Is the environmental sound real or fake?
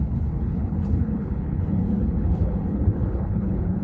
fake